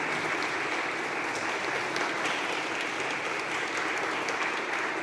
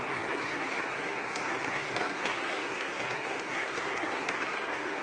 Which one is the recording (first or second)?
first